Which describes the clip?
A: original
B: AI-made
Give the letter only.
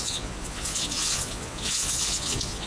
B